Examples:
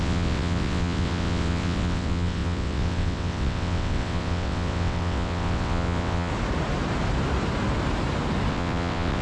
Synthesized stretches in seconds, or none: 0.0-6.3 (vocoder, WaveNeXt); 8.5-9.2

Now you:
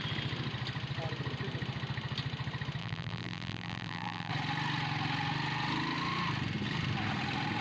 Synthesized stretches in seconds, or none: 2.8-4.3 (vocoder, BigVGAN v2)

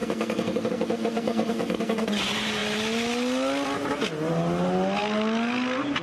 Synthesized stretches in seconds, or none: 0.0-2.1 (codec, SNAC)

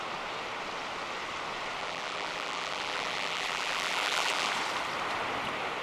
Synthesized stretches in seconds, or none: 1.8-4.5 (vocoder, BigVGAN v2)

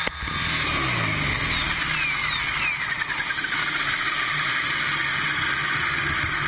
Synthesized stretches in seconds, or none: none

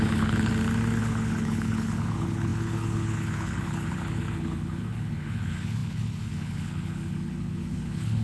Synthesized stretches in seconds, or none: 0.0-0.5 (codec, HILCodec); 1.0-8.2